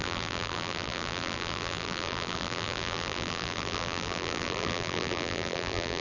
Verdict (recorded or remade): remade